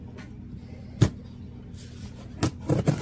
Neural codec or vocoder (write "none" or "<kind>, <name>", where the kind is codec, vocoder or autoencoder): none